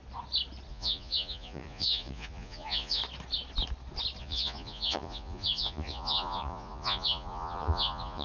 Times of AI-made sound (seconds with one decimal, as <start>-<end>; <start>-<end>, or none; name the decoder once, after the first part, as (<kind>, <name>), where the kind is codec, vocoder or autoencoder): 0.7-3.0 (vocoder, Vocos); 4.2-8.2